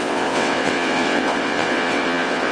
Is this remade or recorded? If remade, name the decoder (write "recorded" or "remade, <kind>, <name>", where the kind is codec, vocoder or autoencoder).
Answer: remade, vocoder, WaveNeXt